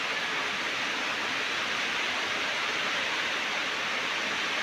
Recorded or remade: recorded